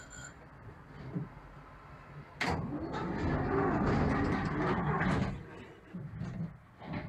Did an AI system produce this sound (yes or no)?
no